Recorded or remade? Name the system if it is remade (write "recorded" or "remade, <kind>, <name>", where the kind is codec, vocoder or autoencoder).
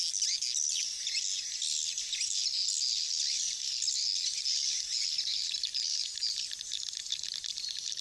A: recorded